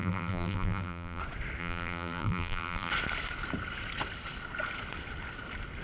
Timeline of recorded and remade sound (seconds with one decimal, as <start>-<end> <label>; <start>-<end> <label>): 0.0-1.2 remade; 1.2-1.6 recorded; 1.6-2.9 remade; 2.9-5.8 recorded